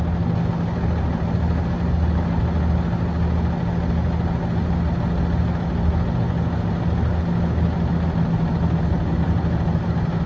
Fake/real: real